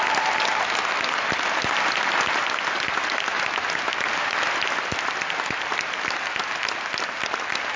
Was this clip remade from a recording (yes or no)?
no